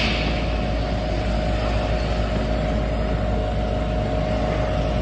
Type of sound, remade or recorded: recorded